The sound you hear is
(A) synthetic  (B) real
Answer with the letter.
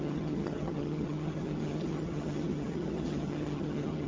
A